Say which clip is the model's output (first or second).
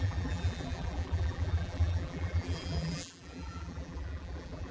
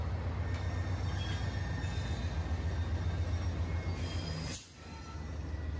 first